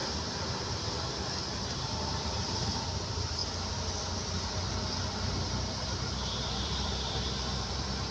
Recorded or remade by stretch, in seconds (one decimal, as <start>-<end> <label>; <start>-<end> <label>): 0.0-1.5 recorded; 1.5-3.4 remade; 3.4-5.7 recorded; 5.7-8.1 remade